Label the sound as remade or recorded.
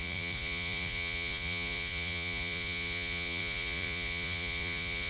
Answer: remade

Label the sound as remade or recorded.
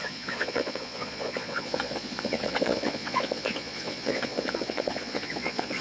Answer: remade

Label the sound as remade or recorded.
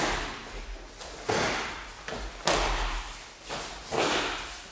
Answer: recorded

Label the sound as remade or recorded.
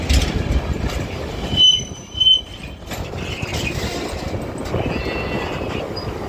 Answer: recorded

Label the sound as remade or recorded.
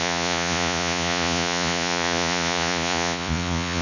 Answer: remade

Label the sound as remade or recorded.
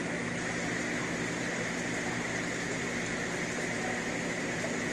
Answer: recorded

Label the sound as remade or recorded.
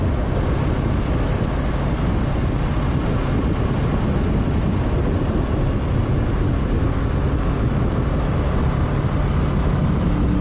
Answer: recorded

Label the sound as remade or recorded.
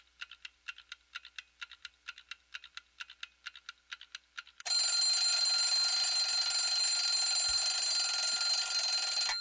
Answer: recorded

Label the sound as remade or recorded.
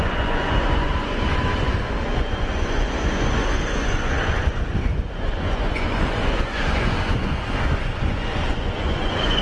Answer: remade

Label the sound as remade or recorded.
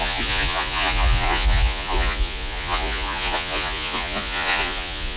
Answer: remade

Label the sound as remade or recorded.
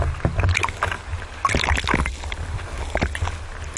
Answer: recorded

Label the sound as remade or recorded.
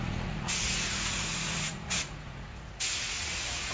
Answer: remade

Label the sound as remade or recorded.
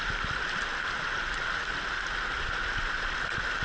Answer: recorded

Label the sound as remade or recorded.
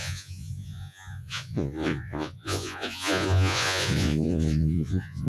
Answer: remade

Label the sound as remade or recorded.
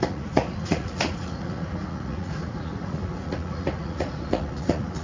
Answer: remade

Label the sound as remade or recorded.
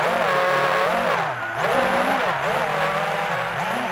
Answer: recorded